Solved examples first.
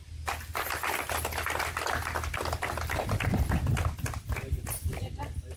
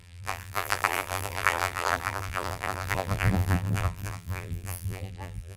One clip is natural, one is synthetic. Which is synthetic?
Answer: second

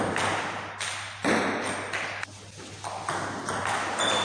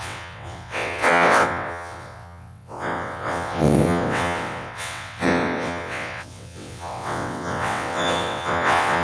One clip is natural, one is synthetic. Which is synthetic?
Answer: second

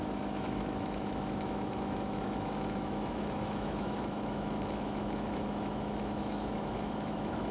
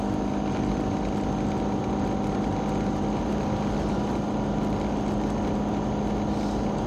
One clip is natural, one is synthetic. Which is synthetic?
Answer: first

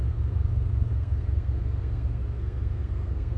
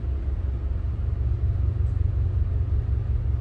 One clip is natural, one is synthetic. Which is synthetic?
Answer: first